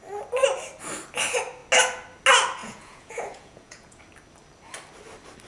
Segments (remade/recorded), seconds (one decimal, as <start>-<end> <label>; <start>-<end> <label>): 0.0-2.6 recorded; 2.6-4.0 remade; 4.0-5.5 recorded